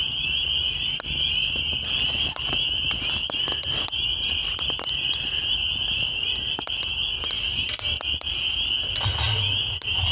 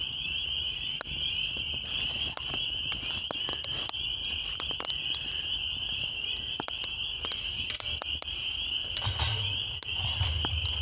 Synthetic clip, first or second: second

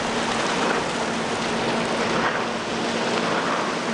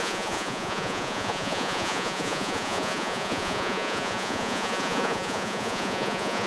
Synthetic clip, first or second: second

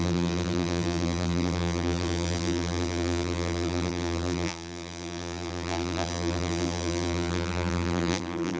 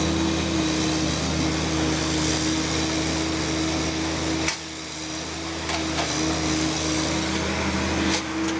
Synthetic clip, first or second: first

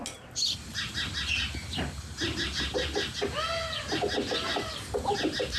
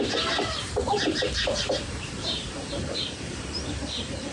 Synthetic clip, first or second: second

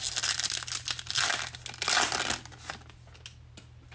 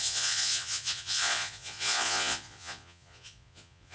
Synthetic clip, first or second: second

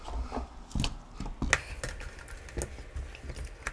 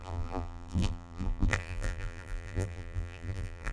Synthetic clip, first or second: second